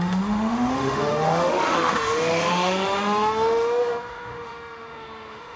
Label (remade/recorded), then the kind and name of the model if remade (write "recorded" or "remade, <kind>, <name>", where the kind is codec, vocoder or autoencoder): remade, autoencoder, DAC-VAE